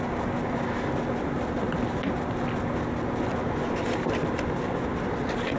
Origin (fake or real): real